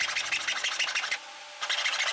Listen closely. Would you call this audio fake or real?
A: real